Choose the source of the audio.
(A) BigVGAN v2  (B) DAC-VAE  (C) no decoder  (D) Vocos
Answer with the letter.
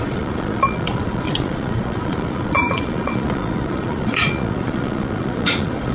D